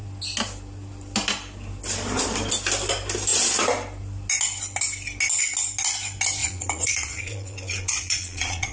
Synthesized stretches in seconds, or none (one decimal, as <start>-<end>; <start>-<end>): 6.4-8.7